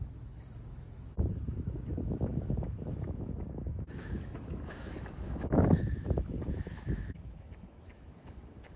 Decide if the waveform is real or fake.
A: fake